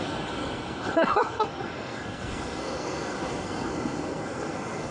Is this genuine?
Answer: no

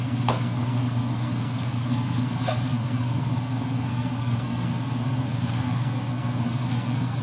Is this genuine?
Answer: no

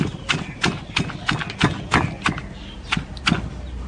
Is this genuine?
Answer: yes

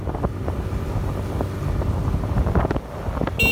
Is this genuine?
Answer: yes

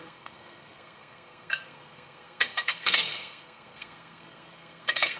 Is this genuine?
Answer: no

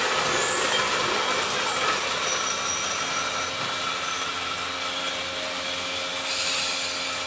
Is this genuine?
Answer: yes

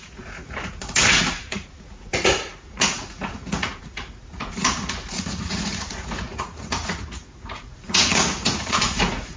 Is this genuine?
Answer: no